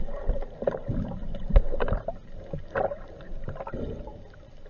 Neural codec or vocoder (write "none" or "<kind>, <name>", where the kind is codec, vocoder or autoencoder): none